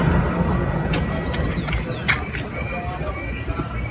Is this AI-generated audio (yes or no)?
no